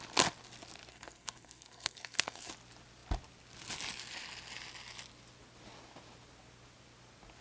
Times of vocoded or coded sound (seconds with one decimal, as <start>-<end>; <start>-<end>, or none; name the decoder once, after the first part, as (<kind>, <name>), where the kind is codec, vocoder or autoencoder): 0.9-2.5 (codec, SNAC)